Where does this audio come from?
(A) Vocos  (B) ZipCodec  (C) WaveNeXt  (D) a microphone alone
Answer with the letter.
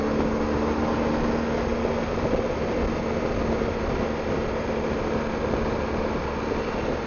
D